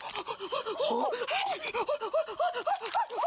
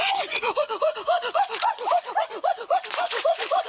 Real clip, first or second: first